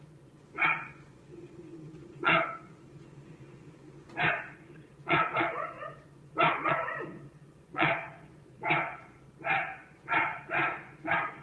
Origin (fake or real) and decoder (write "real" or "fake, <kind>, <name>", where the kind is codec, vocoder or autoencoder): fake, vocoder, Vocos